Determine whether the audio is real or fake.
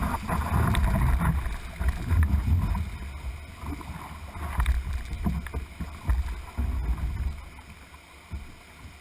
real